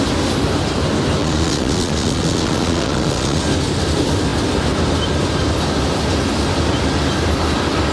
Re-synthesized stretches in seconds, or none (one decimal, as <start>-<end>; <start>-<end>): 1.2-3.4